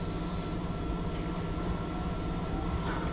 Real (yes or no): yes